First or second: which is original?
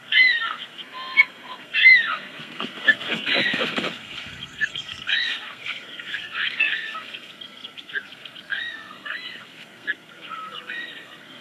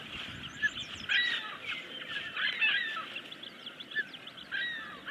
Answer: second